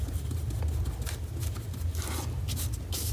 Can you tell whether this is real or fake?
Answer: real